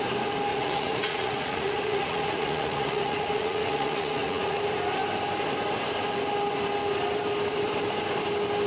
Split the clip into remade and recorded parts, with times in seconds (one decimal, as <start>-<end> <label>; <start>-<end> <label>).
0.0-0.5 recorded; 0.5-4.6 remade; 4.6-8.7 recorded